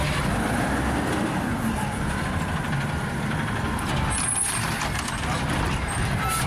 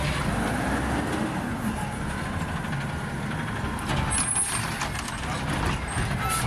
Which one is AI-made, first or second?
first